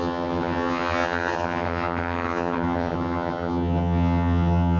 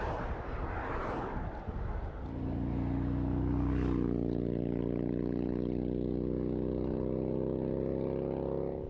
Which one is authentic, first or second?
second